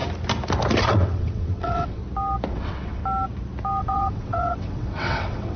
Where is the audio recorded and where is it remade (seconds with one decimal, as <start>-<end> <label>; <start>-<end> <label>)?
0.0-0.8 recorded; 0.8-2.0 remade; 2.0-2.5 recorded; 2.5-3.0 remade; 3.0-3.8 recorded; 3.8-5.6 remade